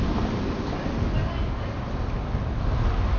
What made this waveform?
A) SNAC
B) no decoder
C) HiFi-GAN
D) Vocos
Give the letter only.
B